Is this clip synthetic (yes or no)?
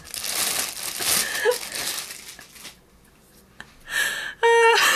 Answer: no